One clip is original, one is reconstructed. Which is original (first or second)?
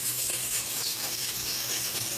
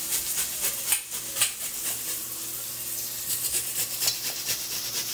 second